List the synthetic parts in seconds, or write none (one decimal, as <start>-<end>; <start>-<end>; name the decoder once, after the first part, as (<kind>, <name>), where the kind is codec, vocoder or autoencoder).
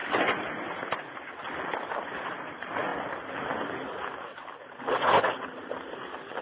none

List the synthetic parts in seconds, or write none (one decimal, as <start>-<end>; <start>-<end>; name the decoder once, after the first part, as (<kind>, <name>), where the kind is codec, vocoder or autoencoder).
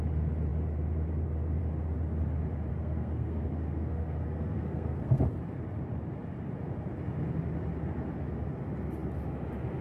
2.7-5.2 (codec, SNAC)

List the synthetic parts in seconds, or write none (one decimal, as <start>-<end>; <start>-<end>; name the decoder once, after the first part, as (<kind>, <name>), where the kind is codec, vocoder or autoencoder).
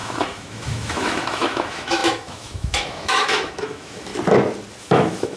0.0-4.1 (autoencoder, DAC-VAE); 4.8-5.4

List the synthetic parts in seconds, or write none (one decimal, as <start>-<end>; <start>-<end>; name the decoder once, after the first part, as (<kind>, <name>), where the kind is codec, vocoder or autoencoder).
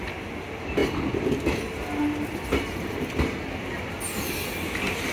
none